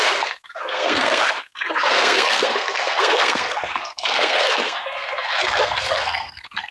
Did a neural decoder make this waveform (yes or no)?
yes